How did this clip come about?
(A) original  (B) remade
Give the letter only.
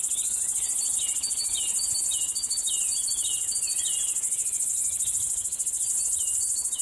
A